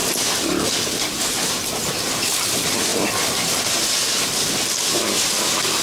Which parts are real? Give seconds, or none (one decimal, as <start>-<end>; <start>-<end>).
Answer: 0.0-5.8